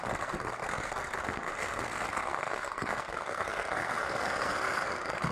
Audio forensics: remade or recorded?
remade